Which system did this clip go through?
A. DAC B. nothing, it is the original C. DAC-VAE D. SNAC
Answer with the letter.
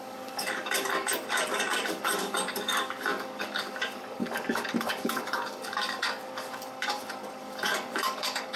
A